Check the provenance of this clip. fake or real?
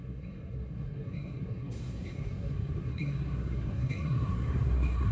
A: fake